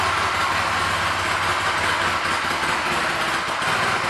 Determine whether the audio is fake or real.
real